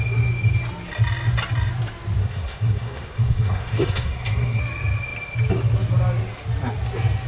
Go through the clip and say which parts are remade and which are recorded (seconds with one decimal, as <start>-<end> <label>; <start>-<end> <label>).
0.0-2.2 recorded; 2.2-4.6 remade; 4.6-7.3 recorded